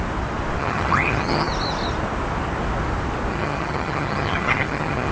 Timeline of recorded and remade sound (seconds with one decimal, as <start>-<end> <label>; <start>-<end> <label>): 0.0-0.6 recorded; 0.6-1.5 remade; 1.5-3.3 recorded; 3.3-5.1 remade